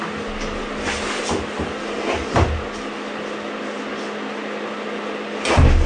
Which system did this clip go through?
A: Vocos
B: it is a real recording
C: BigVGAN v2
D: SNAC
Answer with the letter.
B